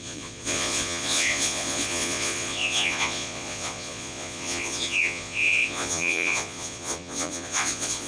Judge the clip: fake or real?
fake